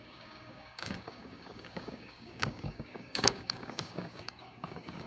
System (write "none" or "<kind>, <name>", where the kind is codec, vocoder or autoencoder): codec, DAC